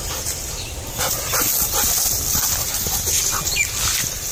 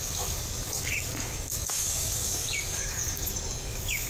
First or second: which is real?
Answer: first